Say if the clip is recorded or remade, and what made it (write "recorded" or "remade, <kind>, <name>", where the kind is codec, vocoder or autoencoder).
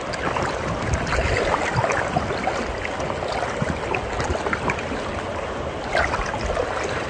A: recorded